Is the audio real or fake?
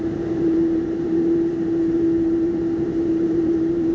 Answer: fake